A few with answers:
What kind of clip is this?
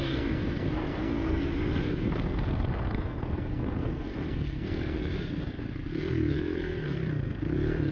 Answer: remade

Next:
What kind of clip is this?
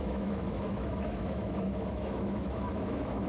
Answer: remade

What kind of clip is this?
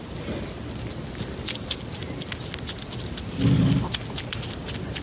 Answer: recorded